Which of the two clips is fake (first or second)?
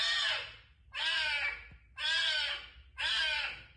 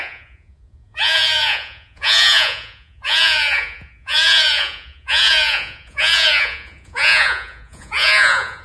second